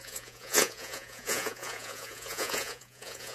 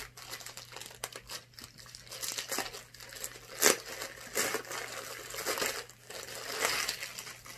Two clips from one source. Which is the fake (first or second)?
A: first